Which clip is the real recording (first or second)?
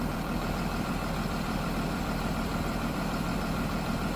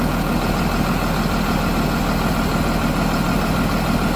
second